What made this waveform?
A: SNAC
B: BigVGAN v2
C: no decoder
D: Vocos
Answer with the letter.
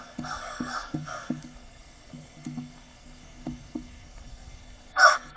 A